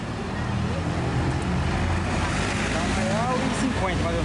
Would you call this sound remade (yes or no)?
no